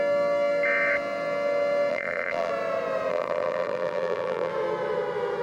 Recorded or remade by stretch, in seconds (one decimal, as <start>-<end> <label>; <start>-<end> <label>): 0.0-1.9 recorded; 1.9-2.5 remade; 2.5-3.1 recorded; 3.1-4.5 remade; 4.5-5.4 recorded

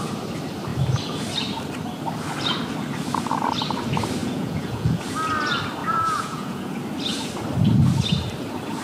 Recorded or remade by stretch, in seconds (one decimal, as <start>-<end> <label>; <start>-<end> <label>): 0.0-4.2 recorded; 4.2-5.0 remade; 5.0-5.8 recorded; 5.8-6.7 remade; 6.7-8.8 recorded

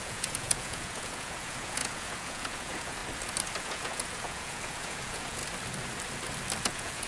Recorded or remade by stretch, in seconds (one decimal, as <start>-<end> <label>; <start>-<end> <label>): 0.0-3.0 remade; 3.0-3.6 recorded; 3.6-5.4 remade; 5.4-6.6 recorded; 6.6-7.1 remade

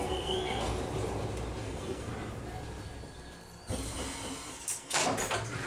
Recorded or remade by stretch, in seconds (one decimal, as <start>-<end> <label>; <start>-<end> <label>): 0.0-0.7 remade; 0.7-1.6 recorded; 1.6-2.1 remade; 2.1-4.5 recorded; 4.5-5.0 remade; 5.0-5.7 recorded

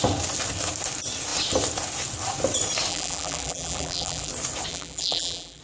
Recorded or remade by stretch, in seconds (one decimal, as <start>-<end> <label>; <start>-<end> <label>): 0.0-2.9 recorded; 2.9-4.3 remade; 4.3-4.7 recorded; 4.7-5.6 remade